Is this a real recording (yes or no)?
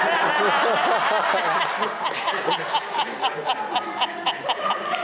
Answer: yes